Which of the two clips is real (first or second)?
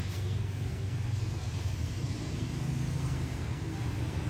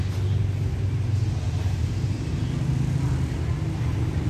second